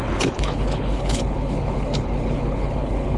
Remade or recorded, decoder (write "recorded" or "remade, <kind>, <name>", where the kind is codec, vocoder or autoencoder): remade, codec, HILCodec